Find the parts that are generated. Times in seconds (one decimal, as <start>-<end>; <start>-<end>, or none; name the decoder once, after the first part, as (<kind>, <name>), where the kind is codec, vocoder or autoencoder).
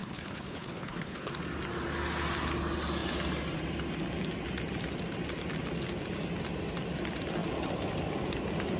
0.0-1.3 (codec, HILCodec)